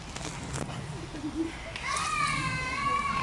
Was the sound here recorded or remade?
recorded